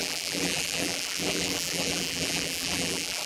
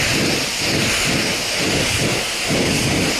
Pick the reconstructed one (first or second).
first